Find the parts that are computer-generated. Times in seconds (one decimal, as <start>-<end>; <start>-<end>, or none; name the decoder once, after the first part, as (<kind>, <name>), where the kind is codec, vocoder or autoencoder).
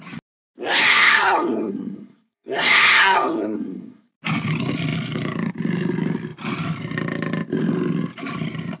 0.8-4.1 (codec, SNAC)